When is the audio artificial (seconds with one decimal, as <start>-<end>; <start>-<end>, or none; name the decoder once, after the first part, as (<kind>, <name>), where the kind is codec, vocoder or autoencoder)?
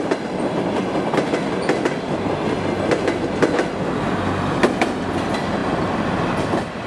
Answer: none